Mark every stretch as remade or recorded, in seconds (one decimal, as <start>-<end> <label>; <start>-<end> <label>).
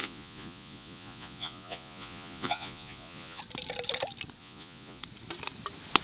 0.0-3.4 remade; 3.4-4.4 recorded; 4.4-5.0 remade; 5.0-6.0 recorded